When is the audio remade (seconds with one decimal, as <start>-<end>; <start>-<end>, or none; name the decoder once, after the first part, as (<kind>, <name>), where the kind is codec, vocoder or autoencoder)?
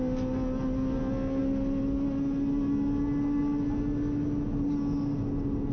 none